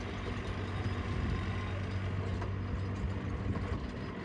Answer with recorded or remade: recorded